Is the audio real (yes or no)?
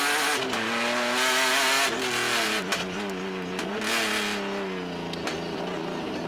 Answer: yes